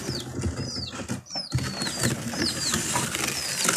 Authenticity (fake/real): real